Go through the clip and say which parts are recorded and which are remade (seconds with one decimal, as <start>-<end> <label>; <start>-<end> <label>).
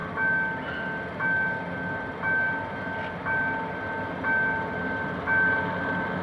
0.0-6.2 recorded